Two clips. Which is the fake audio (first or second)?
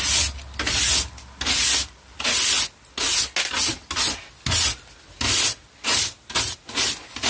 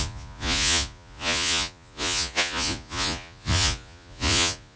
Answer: second